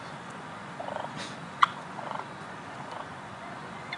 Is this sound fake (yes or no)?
yes